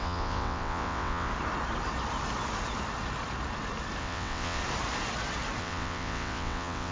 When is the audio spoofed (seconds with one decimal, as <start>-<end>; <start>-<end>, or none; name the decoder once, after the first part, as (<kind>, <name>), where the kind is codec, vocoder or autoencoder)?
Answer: 0.0-1.3 (vocoder, WaveNeXt); 4.0-4.6; 5.6-6.9